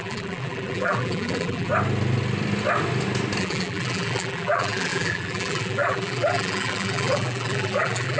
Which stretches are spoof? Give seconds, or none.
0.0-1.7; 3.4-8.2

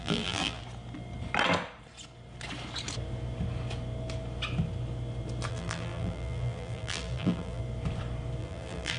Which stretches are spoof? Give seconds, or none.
0.0-0.6; 5.5-7.6; 8.4-9.0

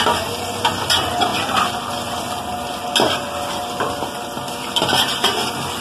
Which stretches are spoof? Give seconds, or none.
none